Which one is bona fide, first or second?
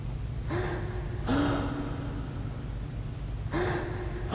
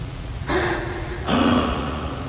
first